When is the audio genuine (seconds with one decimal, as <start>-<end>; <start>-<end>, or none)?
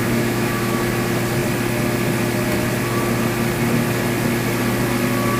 0.8-5.4